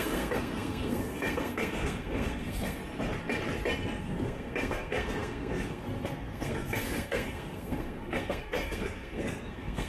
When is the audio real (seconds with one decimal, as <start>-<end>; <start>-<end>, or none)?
2.8-4.0